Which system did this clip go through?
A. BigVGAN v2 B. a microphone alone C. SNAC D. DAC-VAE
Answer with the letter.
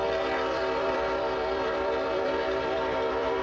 A